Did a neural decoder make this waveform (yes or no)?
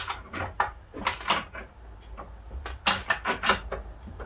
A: no